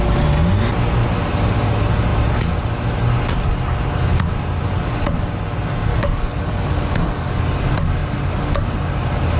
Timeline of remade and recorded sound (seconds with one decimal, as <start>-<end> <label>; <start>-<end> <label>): 0.0-5.9 recorded; 5.9-7.3 remade; 7.3-9.4 recorded